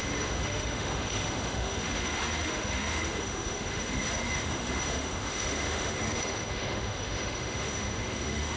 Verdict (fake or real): fake